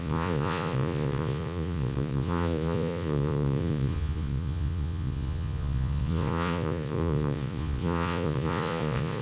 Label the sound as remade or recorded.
remade